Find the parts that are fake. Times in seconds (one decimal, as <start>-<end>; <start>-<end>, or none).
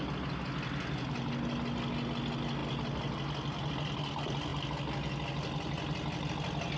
none